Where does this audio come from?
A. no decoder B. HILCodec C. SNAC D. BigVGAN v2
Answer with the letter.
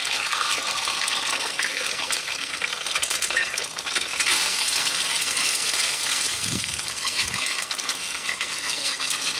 C